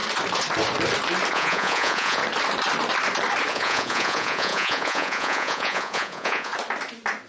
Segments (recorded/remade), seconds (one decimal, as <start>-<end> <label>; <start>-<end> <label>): 0.0-1.3 recorded; 1.3-2.2 remade; 2.2-3.5 recorded; 3.5-6.5 remade; 6.5-7.3 recorded